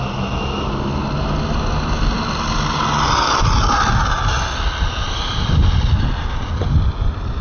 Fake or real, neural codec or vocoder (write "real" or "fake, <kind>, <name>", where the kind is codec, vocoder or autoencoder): real